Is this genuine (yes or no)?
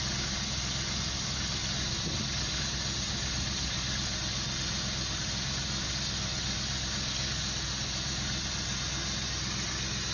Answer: yes